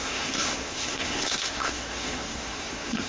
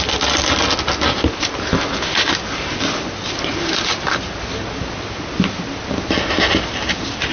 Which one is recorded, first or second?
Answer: second